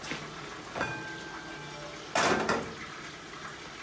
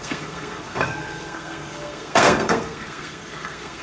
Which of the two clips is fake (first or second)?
second